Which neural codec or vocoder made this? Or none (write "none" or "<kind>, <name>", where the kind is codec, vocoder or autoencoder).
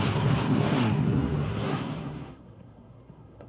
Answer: codec, SNAC